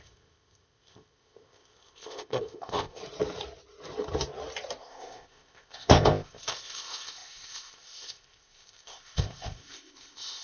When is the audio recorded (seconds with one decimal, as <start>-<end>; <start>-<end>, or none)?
3.0-4.8